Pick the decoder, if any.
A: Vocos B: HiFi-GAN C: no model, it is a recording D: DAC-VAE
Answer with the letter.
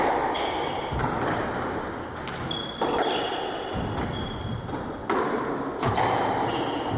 C